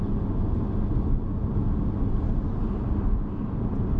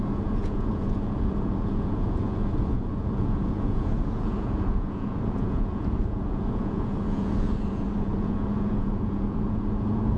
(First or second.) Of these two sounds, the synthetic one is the second